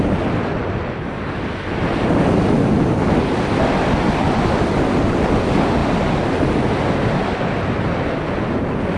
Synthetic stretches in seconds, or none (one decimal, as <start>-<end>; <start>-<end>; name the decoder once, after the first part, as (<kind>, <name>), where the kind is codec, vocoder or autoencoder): none